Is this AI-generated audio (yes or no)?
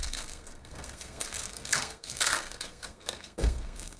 yes